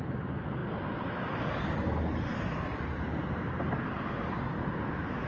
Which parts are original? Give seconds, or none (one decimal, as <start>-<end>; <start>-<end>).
0.0-5.3